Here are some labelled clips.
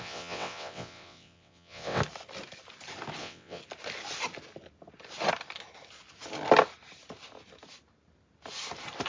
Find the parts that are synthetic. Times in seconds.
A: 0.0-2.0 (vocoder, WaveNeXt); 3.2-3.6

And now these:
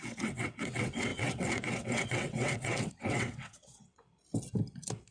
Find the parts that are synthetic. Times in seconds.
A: 0.0-4.1 (vocoder, WaveNeXt)

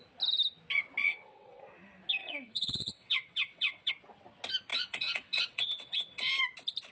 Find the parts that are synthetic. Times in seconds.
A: 1.1-1.6 (vocoder, WaveNeXt); 2.2-3.9; 4.7-6.3